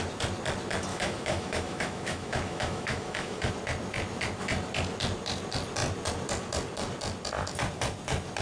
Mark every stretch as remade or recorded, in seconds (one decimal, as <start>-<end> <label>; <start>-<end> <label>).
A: 0.0-0.9 recorded; 0.9-3.5 remade; 3.5-8.4 recorded